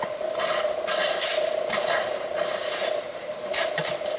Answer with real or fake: real